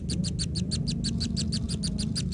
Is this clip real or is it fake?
real